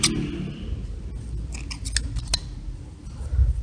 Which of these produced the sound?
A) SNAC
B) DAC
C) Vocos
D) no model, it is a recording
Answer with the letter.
D